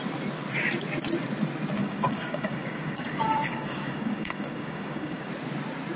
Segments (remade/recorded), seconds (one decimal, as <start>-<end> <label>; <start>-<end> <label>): 0.0-1.8 recorded; 1.8-5.3 remade; 5.3-6.0 recorded